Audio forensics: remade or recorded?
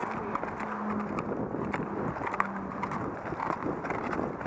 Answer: recorded